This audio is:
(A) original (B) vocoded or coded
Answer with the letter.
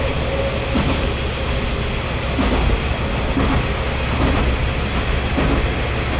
A